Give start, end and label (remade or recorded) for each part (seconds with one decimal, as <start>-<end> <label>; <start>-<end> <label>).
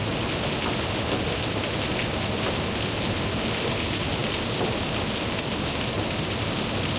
0.0-7.0 recorded